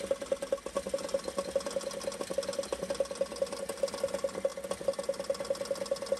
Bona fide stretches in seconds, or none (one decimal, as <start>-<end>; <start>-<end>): 0.0-6.2